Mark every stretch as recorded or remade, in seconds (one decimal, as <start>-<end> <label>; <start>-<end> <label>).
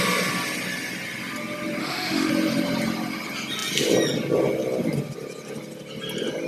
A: 0.0-1.8 recorded; 1.8-2.3 remade; 2.3-6.5 recorded